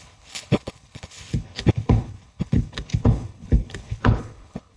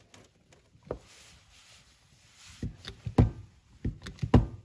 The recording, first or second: second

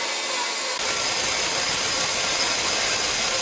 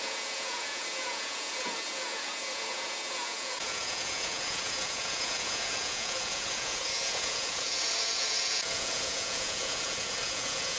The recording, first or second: first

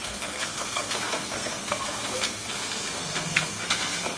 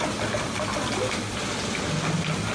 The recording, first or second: second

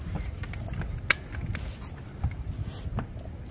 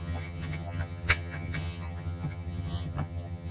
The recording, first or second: first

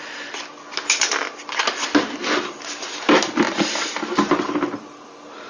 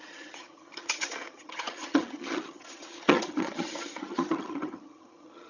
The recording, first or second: first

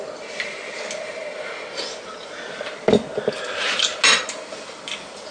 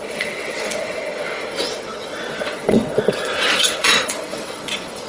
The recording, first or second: first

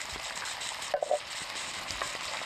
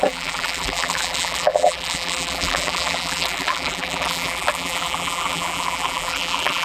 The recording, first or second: first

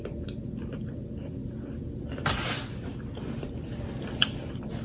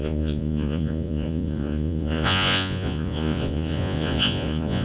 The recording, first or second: first